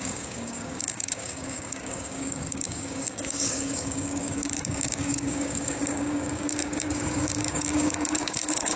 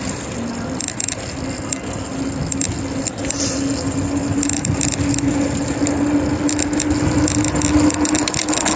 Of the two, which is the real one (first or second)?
second